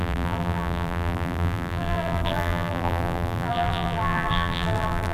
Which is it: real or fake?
fake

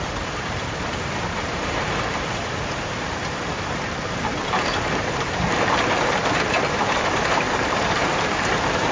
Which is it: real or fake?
fake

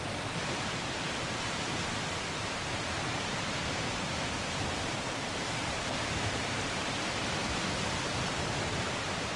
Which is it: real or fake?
fake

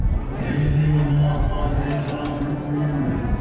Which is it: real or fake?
real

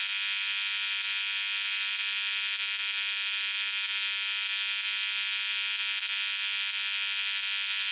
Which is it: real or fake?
real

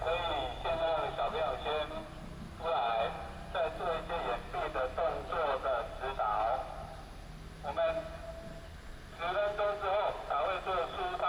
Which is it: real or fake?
real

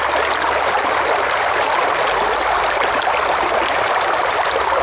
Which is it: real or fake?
real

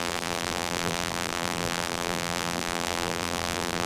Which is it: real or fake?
fake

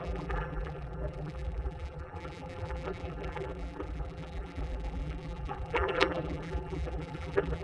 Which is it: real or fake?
fake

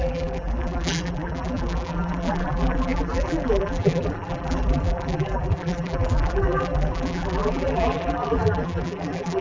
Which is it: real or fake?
fake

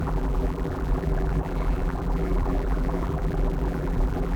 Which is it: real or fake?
fake